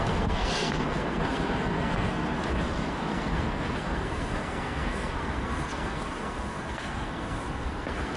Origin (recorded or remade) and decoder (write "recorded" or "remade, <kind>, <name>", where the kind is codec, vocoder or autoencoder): remade, codec, SNAC